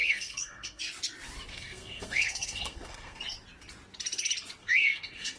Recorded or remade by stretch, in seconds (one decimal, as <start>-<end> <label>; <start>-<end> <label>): 0.0-0.8 remade; 0.8-1.5 recorded; 1.5-3.2 remade; 3.2-4.6 recorded; 4.6-5.4 remade